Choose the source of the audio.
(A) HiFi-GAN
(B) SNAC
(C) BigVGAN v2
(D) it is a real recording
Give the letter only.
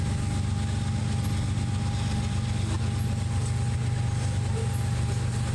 D